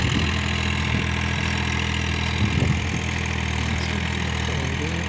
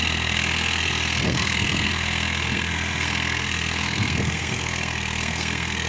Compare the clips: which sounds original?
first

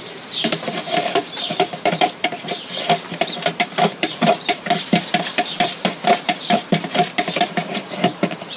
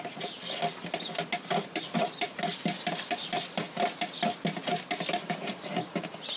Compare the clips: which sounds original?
second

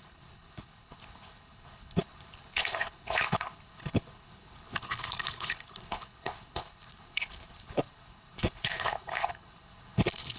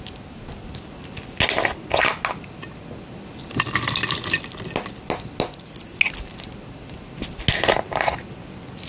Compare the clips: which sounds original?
second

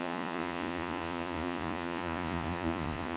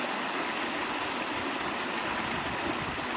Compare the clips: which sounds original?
second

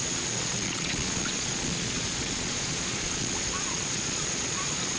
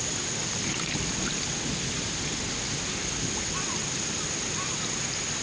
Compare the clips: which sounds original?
second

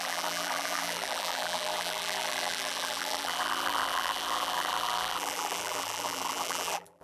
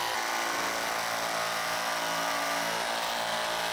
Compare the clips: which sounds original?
second